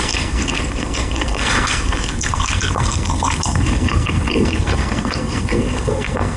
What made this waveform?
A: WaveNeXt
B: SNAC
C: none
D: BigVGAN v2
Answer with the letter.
B